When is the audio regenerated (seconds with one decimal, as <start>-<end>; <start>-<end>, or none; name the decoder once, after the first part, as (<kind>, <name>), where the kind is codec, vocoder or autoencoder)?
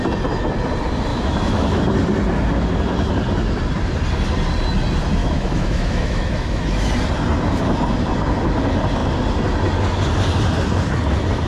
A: 1.1-1.8 (autoencoder, DAC-VAE); 5.2-6.9